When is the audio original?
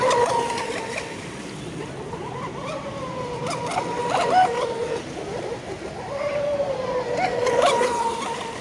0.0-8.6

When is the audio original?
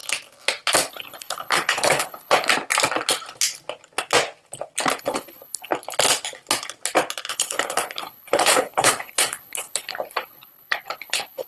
0.0-0.9; 2.5-5.0; 5.7-7.3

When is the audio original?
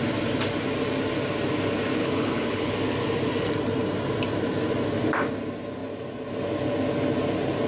0.0-2.0; 2.7-7.7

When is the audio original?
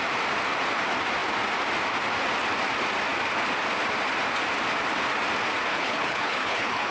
0.0-5.7